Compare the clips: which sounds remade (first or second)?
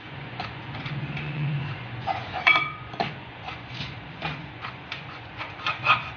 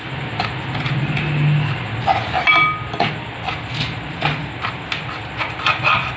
first